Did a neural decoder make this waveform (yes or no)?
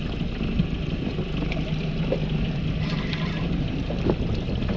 no